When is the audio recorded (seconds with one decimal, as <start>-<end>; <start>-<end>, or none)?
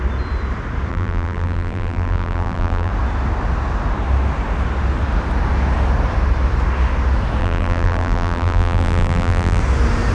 0.0-0.9; 2.9-7.4; 9.6-10.1